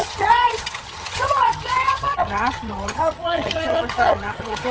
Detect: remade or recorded remade